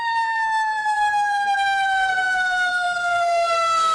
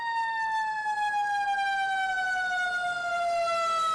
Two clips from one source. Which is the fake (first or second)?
first